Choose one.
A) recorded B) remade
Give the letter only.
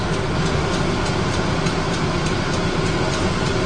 A